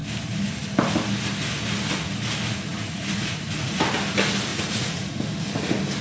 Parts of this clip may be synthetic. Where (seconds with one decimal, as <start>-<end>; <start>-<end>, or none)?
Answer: 2.7-3.8; 4.5-5.2